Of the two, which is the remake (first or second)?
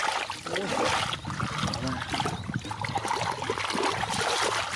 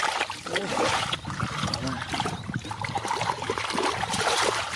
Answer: second